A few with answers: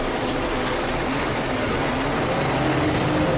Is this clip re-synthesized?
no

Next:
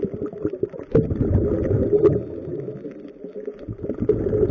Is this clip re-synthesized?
no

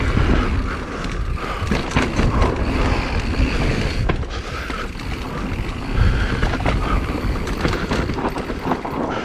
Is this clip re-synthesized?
no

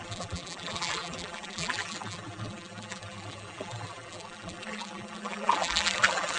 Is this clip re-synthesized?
yes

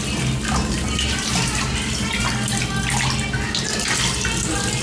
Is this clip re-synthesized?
no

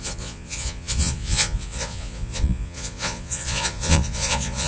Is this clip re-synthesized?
yes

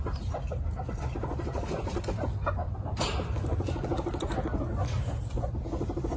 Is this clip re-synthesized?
no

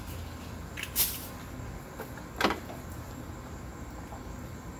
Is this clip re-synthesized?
no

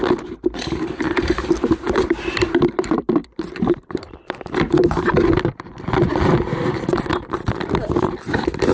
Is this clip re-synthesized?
yes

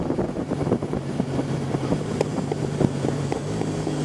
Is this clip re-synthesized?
yes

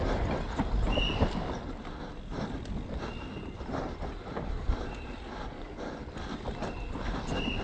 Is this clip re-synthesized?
no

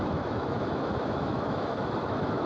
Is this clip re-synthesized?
yes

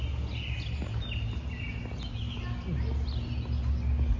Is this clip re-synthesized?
no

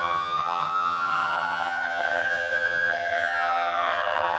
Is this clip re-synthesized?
yes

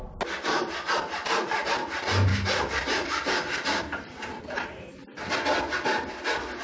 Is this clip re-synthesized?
no